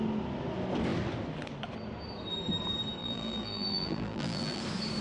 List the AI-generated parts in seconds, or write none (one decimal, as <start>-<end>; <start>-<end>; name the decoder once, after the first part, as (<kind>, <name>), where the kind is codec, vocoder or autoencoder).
3.0-4.6 (vocoder, BigVGAN v2)